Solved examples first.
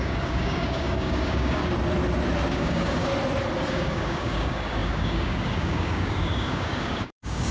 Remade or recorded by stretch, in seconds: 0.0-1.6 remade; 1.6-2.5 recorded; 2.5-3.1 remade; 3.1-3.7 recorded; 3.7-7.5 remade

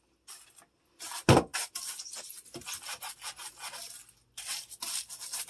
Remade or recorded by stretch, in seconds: 0.0-5.5 recorded

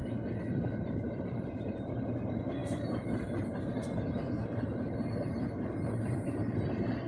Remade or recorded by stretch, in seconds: 0.0-0.5 recorded; 0.5-7.1 remade

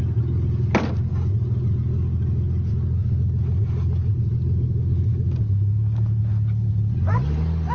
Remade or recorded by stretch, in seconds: 0.0-7.7 recorded

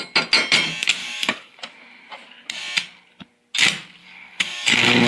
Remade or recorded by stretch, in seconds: 0.0-1.0 recorded; 1.0-1.6 remade; 1.6-4.0 recorded; 4.0-5.1 remade

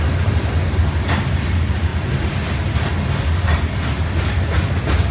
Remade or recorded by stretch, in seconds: 0.0-1.9 recorded; 1.9-2.6 remade; 2.6-5.1 recorded

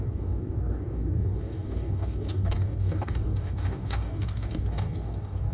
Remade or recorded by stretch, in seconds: 0.0-5.5 remade

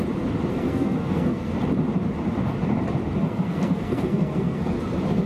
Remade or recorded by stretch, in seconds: 0.0-0.5 recorded; 0.5-1.5 remade; 1.5-3.2 recorded; 3.2-4.8 remade; 4.8-5.3 recorded